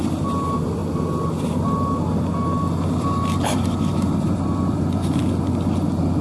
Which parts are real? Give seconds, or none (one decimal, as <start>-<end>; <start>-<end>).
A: 0.0-6.2